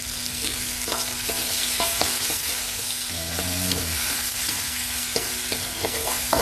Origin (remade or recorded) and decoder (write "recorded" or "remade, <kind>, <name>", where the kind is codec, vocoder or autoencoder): remade, codec, SNAC